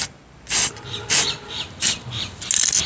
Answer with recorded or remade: recorded